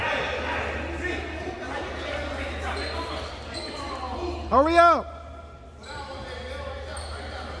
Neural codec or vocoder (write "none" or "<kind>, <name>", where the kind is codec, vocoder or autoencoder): none